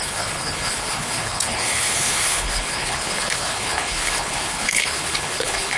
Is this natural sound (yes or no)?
no